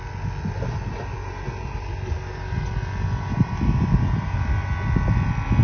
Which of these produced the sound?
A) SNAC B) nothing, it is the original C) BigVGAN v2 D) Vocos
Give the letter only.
B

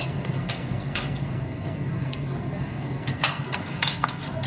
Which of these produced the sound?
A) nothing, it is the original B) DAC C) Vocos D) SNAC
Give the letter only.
D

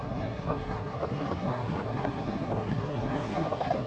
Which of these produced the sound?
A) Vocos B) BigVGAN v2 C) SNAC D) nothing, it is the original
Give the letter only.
C